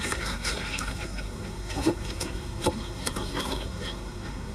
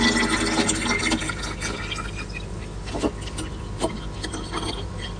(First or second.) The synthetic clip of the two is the first